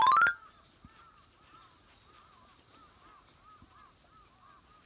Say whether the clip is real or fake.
real